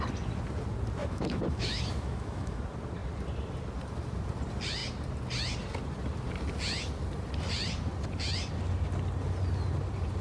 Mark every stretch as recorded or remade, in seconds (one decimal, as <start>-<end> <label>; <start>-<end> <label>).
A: 0.0-1.0 recorded; 1.0-2.6 remade; 2.6-10.2 recorded